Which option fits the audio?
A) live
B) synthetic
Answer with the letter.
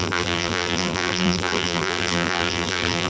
B